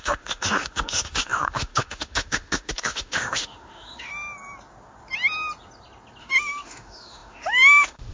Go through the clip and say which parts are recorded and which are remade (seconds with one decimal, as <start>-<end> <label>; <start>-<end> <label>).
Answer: 0.0-4.1 remade; 4.1-6.2 recorded; 6.2-8.1 remade